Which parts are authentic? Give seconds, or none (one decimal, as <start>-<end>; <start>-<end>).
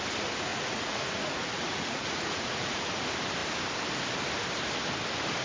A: 0.0-0.5; 3.0-5.4